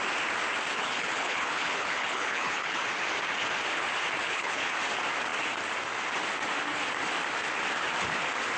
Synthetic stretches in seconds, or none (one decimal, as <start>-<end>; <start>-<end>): 0.7-2.8; 4.2-4.8